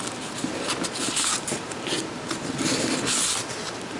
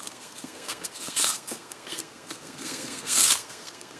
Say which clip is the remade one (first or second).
second